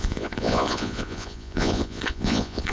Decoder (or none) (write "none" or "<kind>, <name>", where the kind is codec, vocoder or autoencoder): vocoder, Vocos